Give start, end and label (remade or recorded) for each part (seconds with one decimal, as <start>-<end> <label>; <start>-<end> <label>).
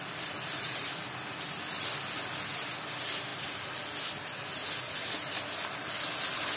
0.0-6.6 recorded